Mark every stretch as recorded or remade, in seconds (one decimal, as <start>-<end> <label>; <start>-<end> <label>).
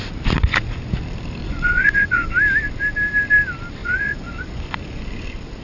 0.0-1.4 recorded; 1.4-2.3 remade; 2.3-3.8 recorded; 3.8-5.0 remade; 5.0-5.6 recorded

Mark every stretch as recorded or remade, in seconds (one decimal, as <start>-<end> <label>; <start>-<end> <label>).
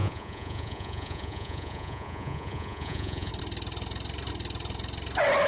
0.0-3.3 remade; 3.3-5.5 recorded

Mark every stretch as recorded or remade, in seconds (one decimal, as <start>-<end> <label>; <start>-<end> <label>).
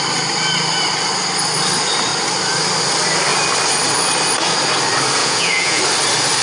0.0-5.2 recorded; 5.2-5.8 remade; 5.8-6.4 recorded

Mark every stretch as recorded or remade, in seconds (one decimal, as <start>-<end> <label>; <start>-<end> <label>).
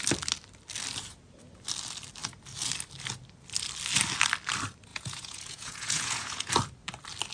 0.0-4.9 recorded; 4.9-6.5 remade; 6.5-7.3 recorded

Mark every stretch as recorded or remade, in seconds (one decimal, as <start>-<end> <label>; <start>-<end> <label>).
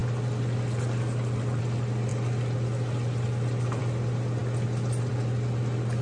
0.0-6.0 recorded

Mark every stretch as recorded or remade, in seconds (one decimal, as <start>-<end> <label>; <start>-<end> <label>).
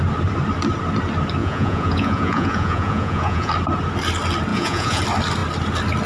0.0-1.4 recorded; 1.4-3.5 remade; 3.5-4.5 recorded; 4.5-5.0 remade; 5.0-6.1 recorded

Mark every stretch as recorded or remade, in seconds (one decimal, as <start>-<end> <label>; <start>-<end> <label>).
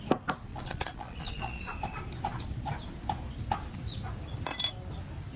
0.0-0.5 recorded; 0.5-1.6 remade; 1.6-5.4 recorded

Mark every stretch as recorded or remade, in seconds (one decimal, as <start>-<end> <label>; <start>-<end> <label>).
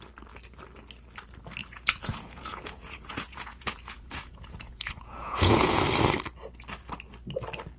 0.0-1.6 recorded; 1.6-5.8 remade; 5.8-7.8 recorded